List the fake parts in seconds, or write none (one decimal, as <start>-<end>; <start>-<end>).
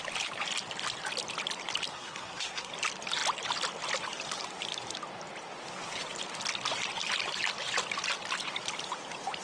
1.9-2.7